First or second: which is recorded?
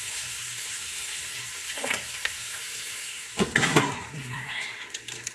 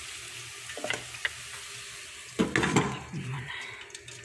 second